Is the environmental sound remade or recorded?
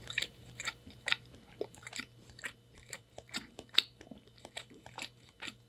remade